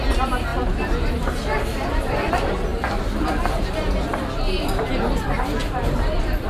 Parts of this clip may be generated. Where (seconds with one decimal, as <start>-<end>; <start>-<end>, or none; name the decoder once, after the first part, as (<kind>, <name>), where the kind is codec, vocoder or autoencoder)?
0.5-2.3 (vocoder, BigVGAN v2); 5.6-6.5